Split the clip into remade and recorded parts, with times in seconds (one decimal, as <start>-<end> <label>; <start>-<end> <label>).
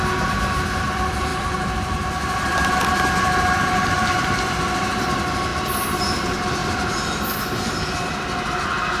0.0-9.0 recorded